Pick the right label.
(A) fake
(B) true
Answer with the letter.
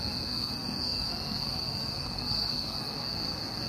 A